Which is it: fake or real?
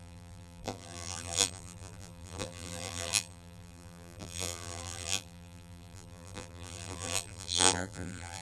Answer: fake